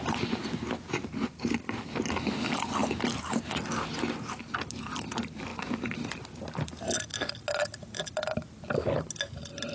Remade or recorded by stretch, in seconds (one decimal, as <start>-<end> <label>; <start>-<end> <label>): 0.0-9.7 recorded